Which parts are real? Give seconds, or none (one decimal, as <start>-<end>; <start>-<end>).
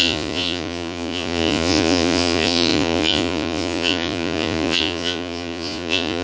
none